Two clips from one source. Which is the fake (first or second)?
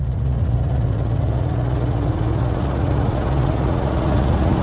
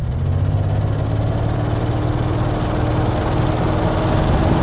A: first